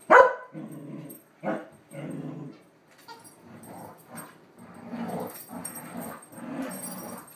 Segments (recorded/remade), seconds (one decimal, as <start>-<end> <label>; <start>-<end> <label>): 0.0-1.6 recorded; 1.6-2.4 remade; 2.4-2.8 recorded; 2.8-6.4 remade; 6.4-7.4 recorded